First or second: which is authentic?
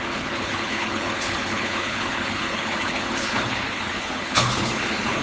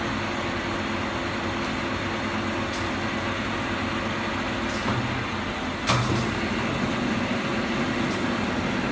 second